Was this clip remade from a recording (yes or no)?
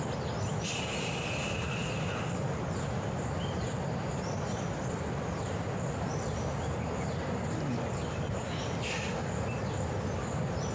no